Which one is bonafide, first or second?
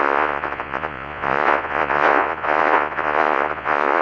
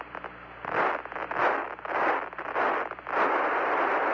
second